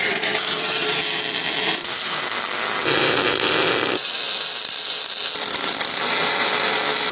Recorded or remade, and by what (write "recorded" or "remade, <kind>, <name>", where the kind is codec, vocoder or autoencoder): recorded